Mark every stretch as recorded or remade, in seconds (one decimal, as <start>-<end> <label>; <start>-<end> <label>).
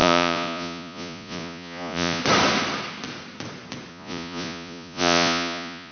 0.0-2.2 remade; 2.2-3.9 recorded; 3.9-5.9 remade